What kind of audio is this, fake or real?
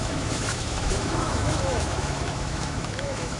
fake